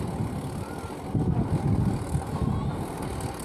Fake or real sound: real